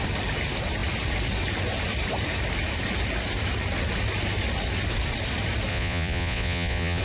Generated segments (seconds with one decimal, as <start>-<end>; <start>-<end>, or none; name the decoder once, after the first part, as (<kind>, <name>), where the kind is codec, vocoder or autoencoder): 5.7-7.0 (vocoder, Vocos)